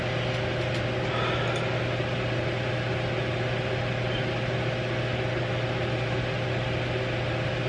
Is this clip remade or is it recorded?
recorded